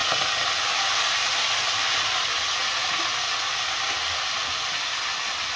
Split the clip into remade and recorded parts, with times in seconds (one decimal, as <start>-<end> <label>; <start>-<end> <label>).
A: 0.0-2.2 remade; 2.2-5.6 recorded